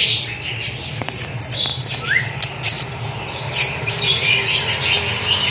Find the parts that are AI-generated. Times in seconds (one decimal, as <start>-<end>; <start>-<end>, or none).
none